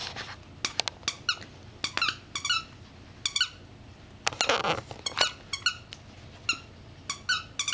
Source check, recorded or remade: recorded